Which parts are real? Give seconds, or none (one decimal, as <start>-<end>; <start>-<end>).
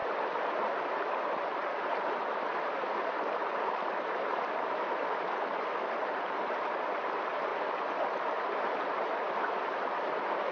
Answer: 0.0-1.0; 1.6-2.5